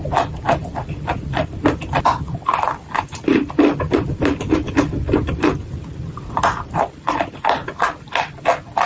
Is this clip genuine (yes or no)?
yes